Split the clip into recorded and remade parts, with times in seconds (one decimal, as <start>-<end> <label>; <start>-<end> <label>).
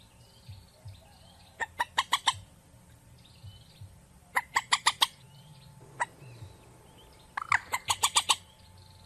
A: 0.0-9.1 recorded